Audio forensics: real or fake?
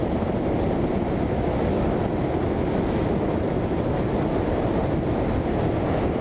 real